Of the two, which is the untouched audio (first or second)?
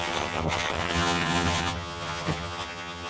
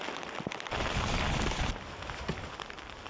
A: second